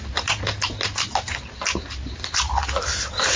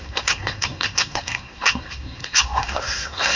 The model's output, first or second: second